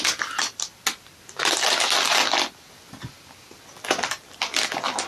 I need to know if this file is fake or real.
real